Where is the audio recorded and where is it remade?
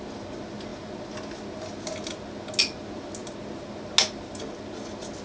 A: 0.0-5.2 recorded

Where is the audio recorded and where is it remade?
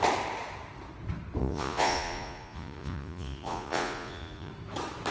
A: 0.0-1.4 recorded; 1.4-4.5 remade; 4.5-5.1 recorded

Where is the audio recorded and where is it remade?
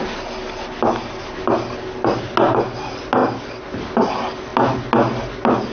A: 0.0-5.7 recorded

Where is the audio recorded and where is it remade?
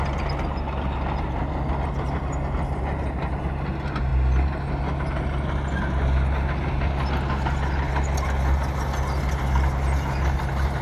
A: 0.0-10.8 recorded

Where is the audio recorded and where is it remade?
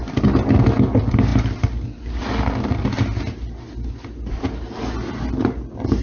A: 0.0-6.0 recorded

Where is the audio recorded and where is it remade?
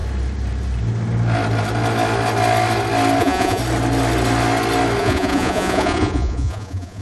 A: 0.0-3.2 recorded; 3.2-3.6 remade; 3.6-5.0 recorded; 5.0-7.0 remade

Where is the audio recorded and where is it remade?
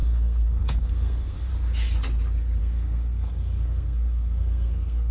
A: 0.0-1.5 remade; 1.5-2.6 recorded; 2.6-5.1 remade